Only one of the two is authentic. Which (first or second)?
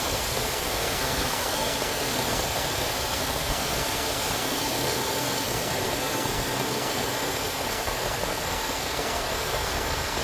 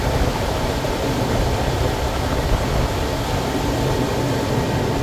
second